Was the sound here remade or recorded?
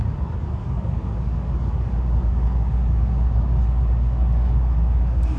remade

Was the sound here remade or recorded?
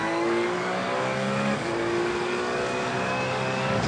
remade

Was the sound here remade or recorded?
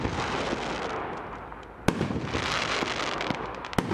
recorded